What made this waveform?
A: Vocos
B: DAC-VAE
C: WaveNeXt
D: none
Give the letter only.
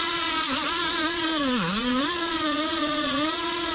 A